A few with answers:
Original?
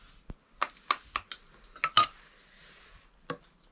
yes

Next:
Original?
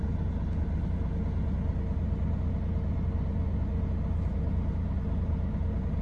yes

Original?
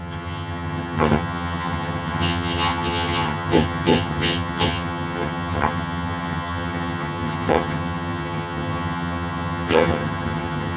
no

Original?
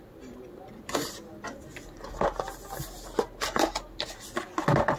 yes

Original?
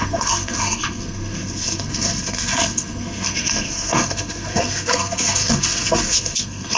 no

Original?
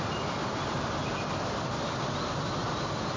yes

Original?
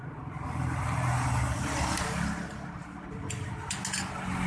yes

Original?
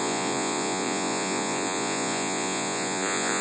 no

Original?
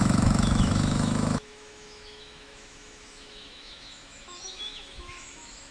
no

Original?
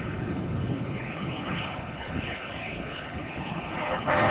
no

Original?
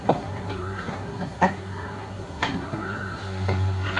no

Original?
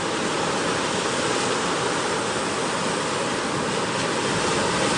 yes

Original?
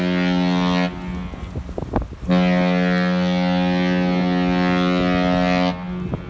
yes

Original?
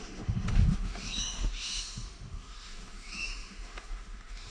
no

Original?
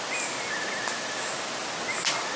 yes